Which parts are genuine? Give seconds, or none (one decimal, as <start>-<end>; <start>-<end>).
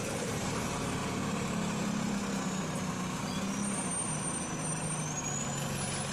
0.6-6.1